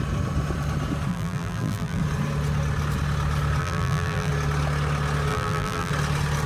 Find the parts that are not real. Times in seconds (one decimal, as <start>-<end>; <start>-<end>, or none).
1.1-2.0; 3.6-4.3; 5.3-5.9